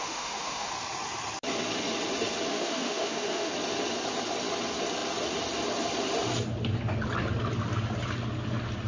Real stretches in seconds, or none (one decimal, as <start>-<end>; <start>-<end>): 0.7-2.5; 3.5-8.9